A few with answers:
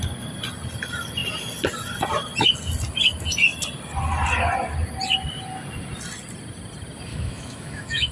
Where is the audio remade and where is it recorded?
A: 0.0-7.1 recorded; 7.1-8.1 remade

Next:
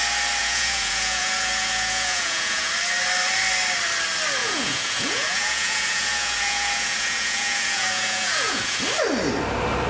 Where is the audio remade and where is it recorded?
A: 0.0-0.4 recorded; 0.4-2.7 remade; 2.7-4.4 recorded; 4.4-8.8 remade; 8.8-9.9 recorded

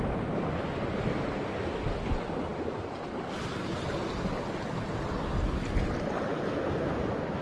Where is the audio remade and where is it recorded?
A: 0.0-7.4 recorded

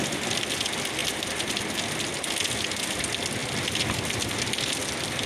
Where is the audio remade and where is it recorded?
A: 0.0-5.3 recorded

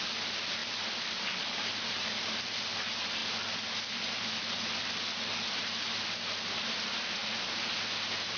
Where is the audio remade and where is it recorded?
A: 0.0-8.4 recorded